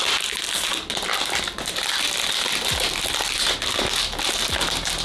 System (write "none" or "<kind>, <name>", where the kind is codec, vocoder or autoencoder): none